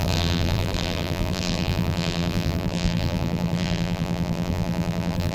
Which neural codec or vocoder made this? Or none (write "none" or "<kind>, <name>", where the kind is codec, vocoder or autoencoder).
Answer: vocoder, BigVGAN v2